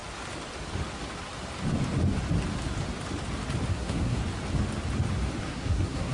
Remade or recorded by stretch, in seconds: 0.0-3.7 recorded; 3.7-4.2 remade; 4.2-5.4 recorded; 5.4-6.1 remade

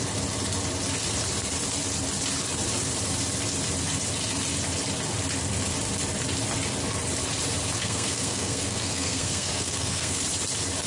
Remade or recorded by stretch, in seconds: 0.0-7.8 recorded; 7.8-10.2 remade; 10.2-10.9 recorded

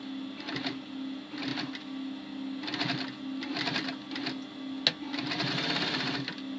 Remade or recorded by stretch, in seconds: 0.0-6.6 recorded

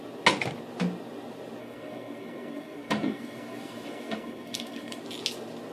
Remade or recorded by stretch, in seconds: 0.0-1.6 recorded; 1.6-5.0 remade; 5.0-5.7 recorded

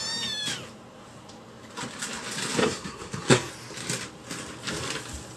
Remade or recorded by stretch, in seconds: 0.0-2.6 recorded; 2.6-3.5 remade; 3.5-5.4 recorded

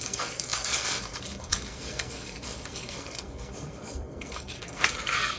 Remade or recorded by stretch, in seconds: 0.0-5.4 remade

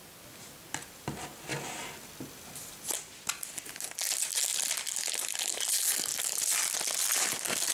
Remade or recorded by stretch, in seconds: 0.0-7.7 recorded

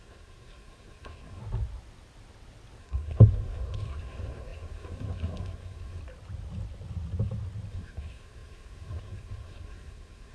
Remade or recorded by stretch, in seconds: 0.0-1.4 remade; 1.4-2.8 recorded; 2.8-6.0 remade; 6.0-7.7 recorded; 7.7-10.3 remade